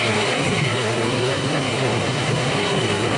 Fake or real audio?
fake